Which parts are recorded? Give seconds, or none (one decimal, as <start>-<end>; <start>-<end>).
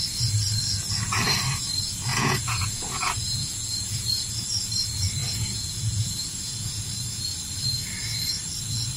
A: 0.0-2.1; 4.3-5.2; 6.9-9.0